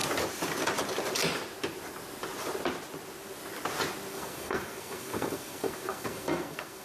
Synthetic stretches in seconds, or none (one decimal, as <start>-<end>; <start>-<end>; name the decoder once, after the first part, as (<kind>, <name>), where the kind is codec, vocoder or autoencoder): 4.1-6.8 (codec, SNAC)